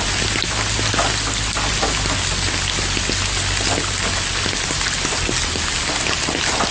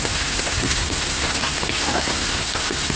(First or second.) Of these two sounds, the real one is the first